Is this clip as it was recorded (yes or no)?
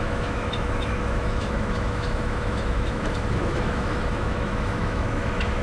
no